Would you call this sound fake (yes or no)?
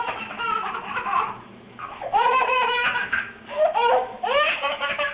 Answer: yes